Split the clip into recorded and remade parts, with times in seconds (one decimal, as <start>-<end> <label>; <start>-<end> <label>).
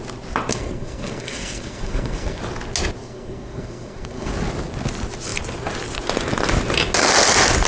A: 0.0-0.5 recorded; 0.5-2.4 remade; 2.4-3.0 recorded; 3.0-4.3 remade; 4.3-7.7 recorded